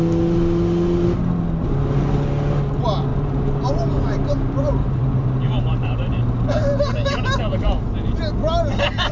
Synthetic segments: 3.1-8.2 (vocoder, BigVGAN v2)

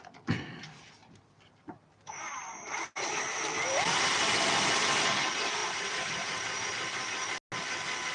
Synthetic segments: 1.0-4.1 (vocoder, BigVGAN v2); 5.6-6.7

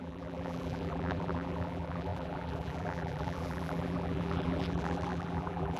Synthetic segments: 0.0-5.8 (vocoder, BigVGAN v2)

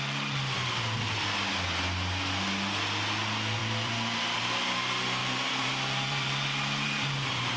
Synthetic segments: 3.6-4.4 (vocoder, BigVGAN v2); 5.2-7.6

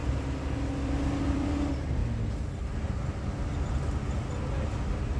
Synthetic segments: 0.0-2.0 (vocoder, BigVGAN v2)

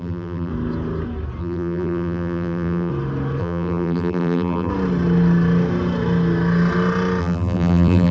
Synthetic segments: 0.0-0.5 (vocoder, BigVGAN v2); 1.4-2.9; 3.4-4.7; 7.2-8.1